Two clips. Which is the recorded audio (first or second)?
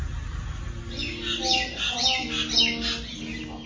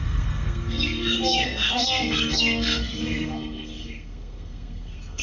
first